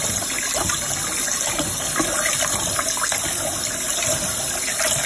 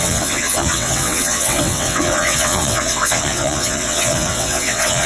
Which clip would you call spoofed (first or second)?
second